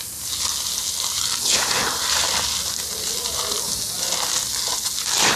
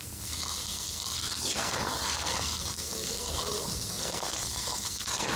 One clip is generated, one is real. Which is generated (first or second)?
second